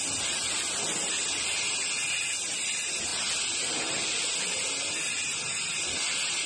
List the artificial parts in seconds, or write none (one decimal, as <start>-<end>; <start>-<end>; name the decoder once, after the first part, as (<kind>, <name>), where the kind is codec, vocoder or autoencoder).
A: none